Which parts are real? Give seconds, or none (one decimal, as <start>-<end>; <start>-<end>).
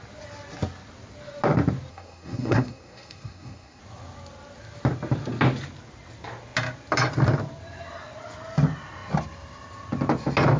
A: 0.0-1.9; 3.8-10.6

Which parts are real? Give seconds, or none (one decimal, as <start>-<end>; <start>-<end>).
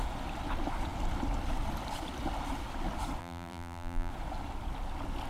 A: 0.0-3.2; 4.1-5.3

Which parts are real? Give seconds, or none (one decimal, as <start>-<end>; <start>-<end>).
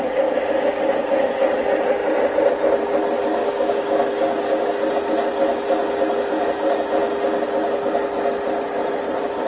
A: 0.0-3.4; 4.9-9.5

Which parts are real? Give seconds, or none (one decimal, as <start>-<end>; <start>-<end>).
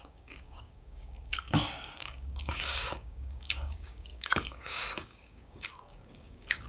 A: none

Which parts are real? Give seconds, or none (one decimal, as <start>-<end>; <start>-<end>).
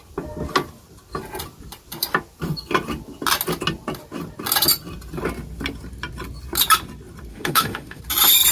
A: 0.0-7.3; 8.0-8.5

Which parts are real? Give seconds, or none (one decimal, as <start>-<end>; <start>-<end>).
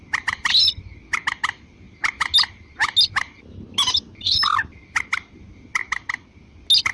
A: 0.0-6.9